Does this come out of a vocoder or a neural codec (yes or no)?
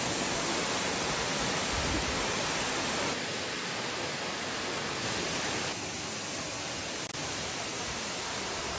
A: no